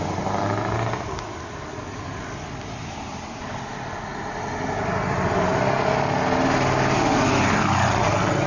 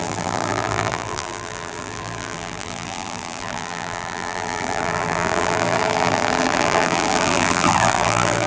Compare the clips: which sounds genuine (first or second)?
first